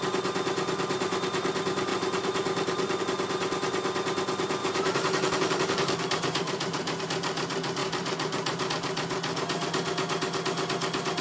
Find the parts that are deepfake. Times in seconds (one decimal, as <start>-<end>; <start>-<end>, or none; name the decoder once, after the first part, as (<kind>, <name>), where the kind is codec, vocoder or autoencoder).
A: 1.9-3.0 (vocoder, BigVGAN v2); 4.6-7.0; 7.8-8.7